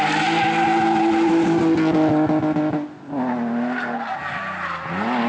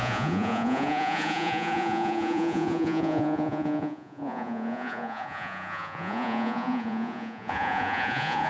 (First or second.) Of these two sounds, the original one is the first